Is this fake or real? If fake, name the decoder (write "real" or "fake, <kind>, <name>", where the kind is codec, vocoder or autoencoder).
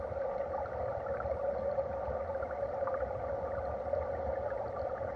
real